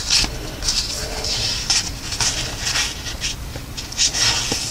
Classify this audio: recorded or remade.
recorded